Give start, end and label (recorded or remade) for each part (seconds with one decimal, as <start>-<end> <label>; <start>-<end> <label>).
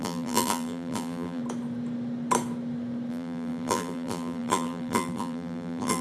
0.0-1.4 remade; 1.4-3.1 recorded; 3.1-6.0 remade